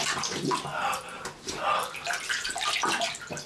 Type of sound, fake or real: real